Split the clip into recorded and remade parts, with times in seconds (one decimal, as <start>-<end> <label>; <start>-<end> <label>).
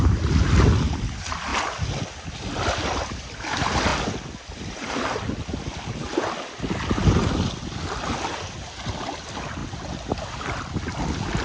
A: 0.0-11.4 recorded